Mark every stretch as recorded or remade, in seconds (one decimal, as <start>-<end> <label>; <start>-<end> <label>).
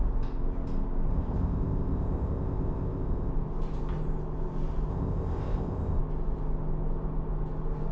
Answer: 0.0-1.1 recorded; 1.1-3.3 remade; 3.3-4.9 recorded; 4.9-6.0 remade; 6.0-7.9 recorded